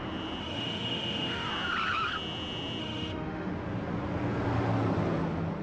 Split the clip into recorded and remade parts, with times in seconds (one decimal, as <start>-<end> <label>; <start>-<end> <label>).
0.0-0.4 recorded; 0.4-1.5 remade; 1.5-2.8 recorded; 2.8-3.5 remade; 3.5-5.6 recorded